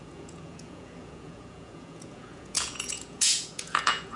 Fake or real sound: fake